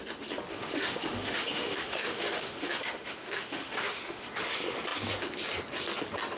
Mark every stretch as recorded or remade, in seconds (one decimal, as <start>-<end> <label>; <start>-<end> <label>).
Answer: 0.0-0.5 recorded; 0.5-4.3 remade; 4.3-6.4 recorded